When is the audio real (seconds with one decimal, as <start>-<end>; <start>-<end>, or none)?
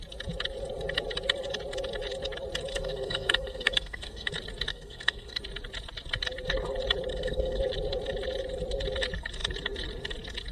0.0-2.7; 4.3-4.7; 5.4-7.1; 7.6-10.5